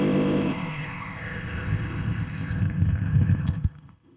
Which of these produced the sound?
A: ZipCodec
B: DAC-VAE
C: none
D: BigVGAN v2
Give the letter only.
A